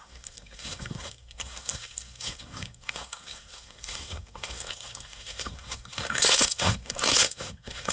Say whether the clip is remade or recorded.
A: remade